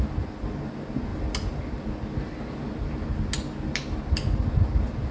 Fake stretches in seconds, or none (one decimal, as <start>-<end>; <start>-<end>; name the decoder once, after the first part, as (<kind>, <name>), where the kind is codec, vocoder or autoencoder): none